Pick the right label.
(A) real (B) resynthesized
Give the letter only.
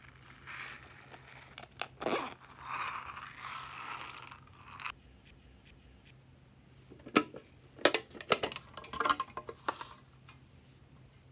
A